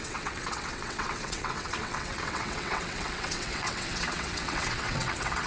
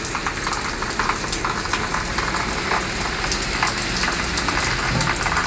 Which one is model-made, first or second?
first